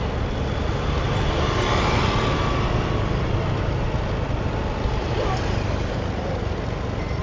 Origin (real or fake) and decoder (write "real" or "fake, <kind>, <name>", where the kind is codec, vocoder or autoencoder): real